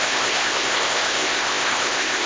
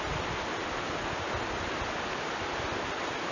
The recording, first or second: second